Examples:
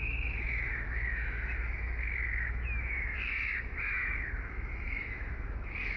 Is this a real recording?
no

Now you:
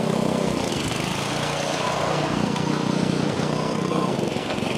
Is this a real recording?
no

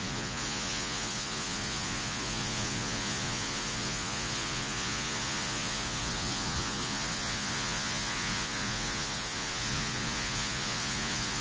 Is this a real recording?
no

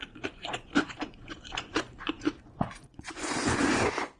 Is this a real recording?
no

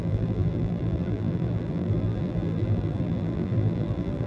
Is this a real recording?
no